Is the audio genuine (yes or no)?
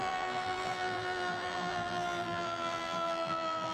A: no